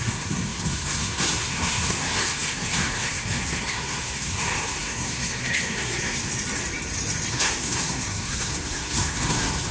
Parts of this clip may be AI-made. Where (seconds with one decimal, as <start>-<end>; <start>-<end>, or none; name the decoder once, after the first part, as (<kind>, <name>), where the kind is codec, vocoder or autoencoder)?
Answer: 0.0-6.3 (codec, SNAC); 7.3-9.7